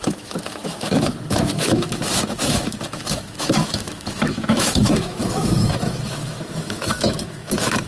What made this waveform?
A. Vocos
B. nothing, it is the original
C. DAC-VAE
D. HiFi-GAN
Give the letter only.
C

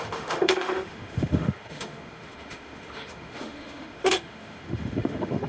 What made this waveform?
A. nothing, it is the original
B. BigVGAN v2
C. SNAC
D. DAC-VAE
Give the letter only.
D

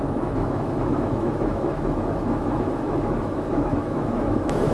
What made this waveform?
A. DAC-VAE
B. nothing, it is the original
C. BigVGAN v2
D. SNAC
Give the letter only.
A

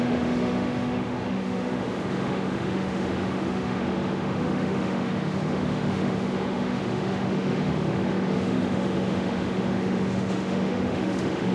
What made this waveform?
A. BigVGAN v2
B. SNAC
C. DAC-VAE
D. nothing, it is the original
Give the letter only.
C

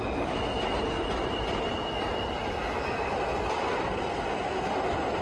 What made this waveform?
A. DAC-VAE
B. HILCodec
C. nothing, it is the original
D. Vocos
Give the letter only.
C